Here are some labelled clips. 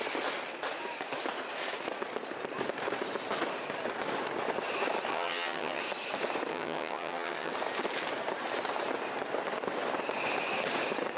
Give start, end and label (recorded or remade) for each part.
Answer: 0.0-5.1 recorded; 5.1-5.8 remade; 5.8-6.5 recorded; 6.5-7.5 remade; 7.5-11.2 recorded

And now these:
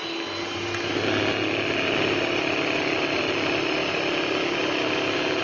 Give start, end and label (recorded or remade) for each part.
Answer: 0.0-5.4 recorded

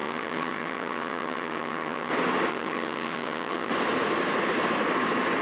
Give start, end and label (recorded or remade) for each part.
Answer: 0.0-2.1 remade; 2.1-2.5 recorded; 2.5-3.7 remade; 3.7-5.4 recorded

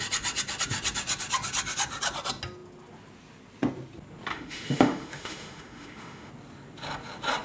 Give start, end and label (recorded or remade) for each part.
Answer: 0.0-4.3 recorded; 4.3-6.3 remade; 6.3-7.4 recorded

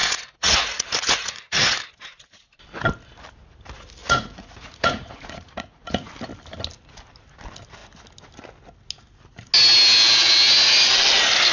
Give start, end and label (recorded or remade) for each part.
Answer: 0.0-1.8 remade; 1.8-4.0 recorded; 4.0-6.1 remade; 6.1-11.5 recorded

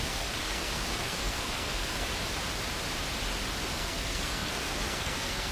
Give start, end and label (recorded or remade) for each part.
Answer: 0.0-2.1 remade; 2.1-3.7 recorded; 3.7-5.5 remade

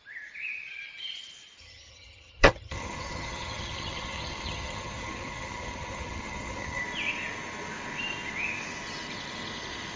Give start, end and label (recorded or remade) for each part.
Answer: 0.0-1.6 recorded; 1.6-6.8 remade; 6.8-10.0 recorded

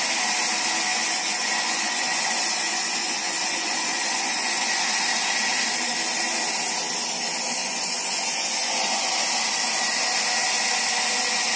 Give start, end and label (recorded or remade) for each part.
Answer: 0.0-0.9 recorded; 0.9-4.7 remade; 4.7-7.6 recorded; 7.6-9.1 remade; 9.1-11.6 recorded